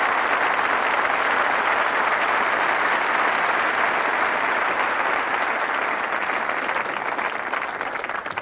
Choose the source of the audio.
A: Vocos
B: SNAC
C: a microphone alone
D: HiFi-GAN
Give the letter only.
C